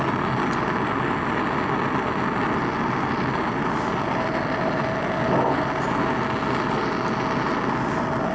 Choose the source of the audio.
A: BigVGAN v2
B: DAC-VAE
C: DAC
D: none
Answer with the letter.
D